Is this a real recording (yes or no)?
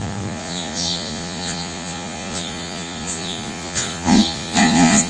no